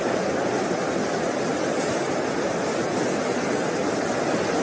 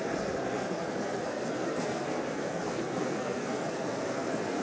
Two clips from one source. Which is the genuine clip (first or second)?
first